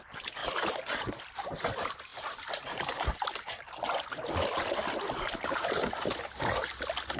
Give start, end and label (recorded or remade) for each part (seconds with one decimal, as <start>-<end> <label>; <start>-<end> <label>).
0.0-0.4 recorded; 0.4-1.4 remade; 1.4-2.1 recorded; 2.1-5.4 remade; 5.4-7.2 recorded